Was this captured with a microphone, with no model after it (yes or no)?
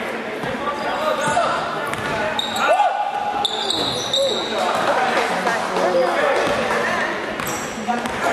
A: yes